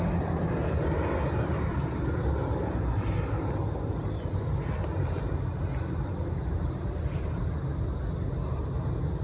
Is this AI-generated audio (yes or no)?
no